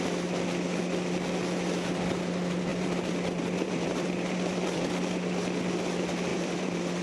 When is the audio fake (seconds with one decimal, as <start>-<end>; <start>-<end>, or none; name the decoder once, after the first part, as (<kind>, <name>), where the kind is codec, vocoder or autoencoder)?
2.7-4.8 (vocoder, BigVGAN v2); 6.3-7.0